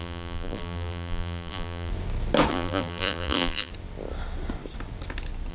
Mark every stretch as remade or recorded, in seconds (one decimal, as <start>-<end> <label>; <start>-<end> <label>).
0.0-1.9 remade; 1.9-2.5 recorded; 2.5-3.7 remade; 3.7-5.5 recorded